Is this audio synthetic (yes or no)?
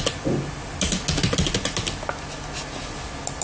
no